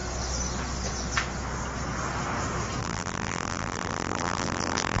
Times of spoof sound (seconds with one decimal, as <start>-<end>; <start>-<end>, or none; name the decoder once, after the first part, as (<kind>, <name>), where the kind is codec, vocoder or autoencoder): 2.8-5.0 (vocoder, BigVGAN v2)